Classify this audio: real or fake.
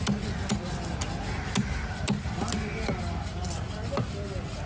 real